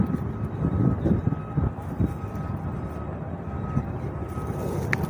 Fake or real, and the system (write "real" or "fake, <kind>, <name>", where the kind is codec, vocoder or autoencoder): real